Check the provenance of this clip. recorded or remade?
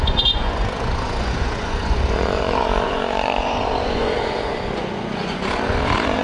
remade